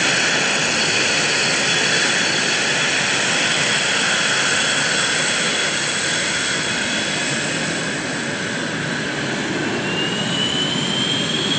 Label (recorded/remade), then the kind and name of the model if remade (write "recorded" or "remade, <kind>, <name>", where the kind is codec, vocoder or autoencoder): recorded